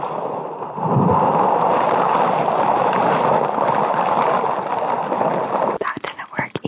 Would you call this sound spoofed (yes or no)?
no